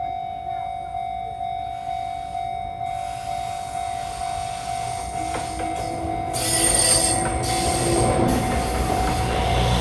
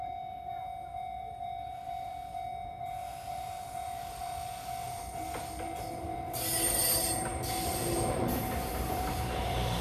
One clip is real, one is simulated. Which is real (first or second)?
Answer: first